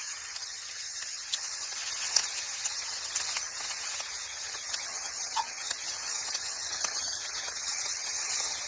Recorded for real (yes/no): no